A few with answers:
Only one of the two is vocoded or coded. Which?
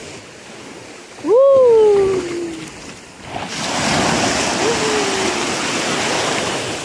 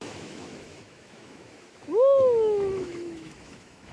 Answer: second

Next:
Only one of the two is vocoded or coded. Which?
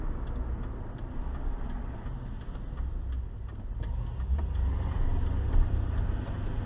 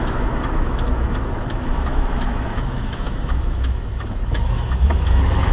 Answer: second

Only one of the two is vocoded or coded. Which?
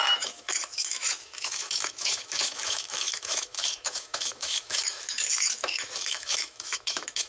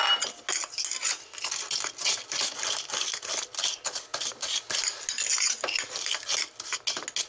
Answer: first